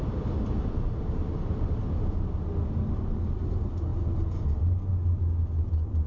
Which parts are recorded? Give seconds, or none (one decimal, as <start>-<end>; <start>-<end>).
0.0-6.1